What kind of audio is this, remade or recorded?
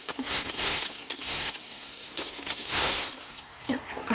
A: remade